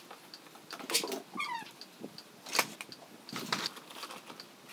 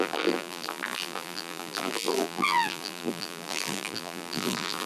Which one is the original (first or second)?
first